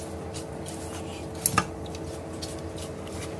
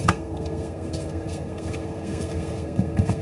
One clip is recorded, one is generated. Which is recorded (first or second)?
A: first